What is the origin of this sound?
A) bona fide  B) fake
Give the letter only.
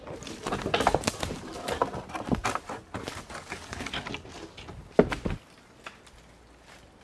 A